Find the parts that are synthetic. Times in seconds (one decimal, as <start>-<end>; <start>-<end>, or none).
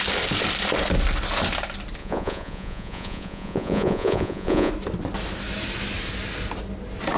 2.0-4.7